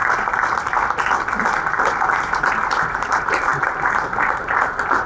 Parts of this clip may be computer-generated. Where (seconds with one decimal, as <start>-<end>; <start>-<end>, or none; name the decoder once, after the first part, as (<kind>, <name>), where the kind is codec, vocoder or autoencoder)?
none